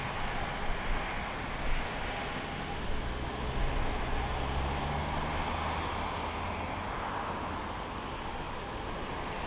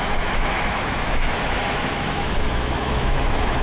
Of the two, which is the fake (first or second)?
second